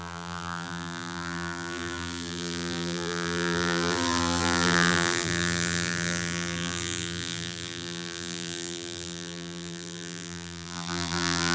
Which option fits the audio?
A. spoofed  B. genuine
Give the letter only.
A